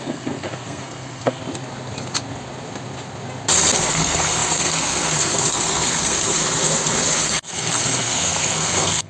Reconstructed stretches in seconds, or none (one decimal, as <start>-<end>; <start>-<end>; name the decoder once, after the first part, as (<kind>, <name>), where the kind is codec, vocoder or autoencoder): 0.0-1.4 (codec, SNAC); 3.9-6.4; 7.2-9.1